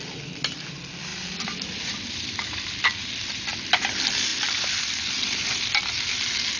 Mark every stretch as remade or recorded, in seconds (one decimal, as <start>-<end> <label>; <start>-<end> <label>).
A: 0.0-1.1 recorded; 1.1-3.5 remade; 3.5-4.3 recorded; 4.3-5.6 remade; 5.6-6.6 recorded